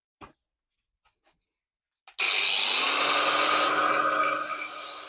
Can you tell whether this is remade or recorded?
recorded